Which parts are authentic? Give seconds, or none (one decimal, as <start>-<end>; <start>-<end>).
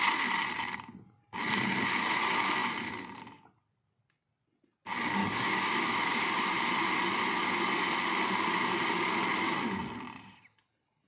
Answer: 0.0-5.2; 6.5-11.1